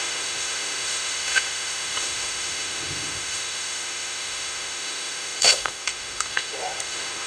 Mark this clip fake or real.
fake